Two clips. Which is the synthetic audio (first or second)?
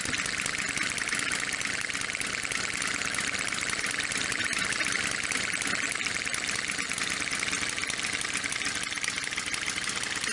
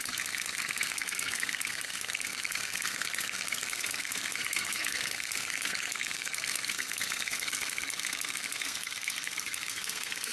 second